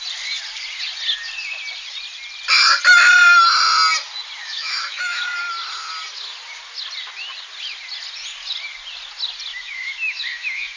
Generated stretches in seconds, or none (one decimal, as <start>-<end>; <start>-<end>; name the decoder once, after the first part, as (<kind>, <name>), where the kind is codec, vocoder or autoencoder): 4.4-5.2 (autoencoder, DAC-VAE); 9.5-10.8

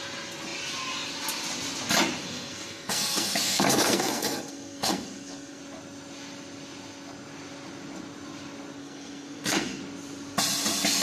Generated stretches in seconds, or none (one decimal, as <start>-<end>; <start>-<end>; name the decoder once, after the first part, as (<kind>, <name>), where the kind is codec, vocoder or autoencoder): 2.2-5.6 (codec, SNAC); 8.8-9.8